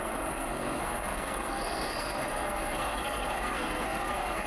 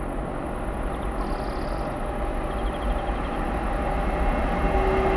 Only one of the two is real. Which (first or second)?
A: second